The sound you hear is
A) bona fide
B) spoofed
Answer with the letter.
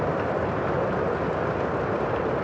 A